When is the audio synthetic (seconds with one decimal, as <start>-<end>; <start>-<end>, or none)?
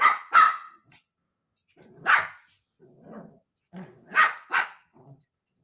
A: 0.0-1.2; 3.6-5.6